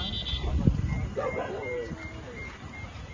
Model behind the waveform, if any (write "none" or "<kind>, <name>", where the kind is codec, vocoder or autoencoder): none